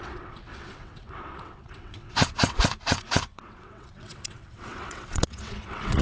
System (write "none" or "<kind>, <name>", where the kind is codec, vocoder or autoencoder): vocoder, WaveNeXt